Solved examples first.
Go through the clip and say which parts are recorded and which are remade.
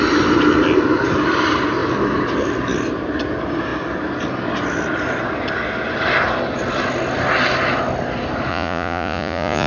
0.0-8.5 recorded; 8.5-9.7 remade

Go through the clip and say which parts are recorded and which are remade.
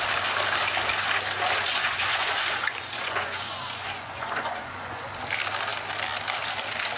0.0-1.6 recorded; 1.6-5.1 remade; 5.1-7.0 recorded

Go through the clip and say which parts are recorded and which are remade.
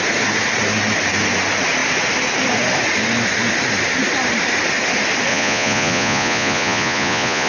0.0-5.3 recorded; 5.3-7.5 remade